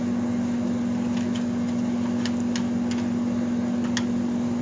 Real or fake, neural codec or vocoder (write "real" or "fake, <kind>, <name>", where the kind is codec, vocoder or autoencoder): real